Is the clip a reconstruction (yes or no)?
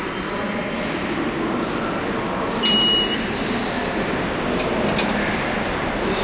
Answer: no